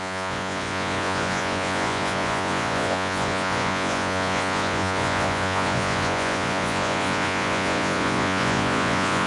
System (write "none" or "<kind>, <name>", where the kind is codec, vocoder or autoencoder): vocoder, Vocos